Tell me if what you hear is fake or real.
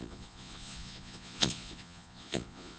fake